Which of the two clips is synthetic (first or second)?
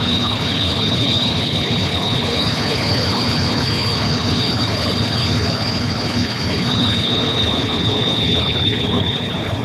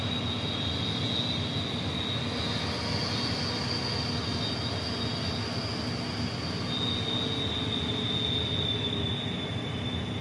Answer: first